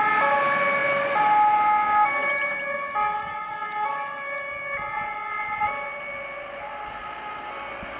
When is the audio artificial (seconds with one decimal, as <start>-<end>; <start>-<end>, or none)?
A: none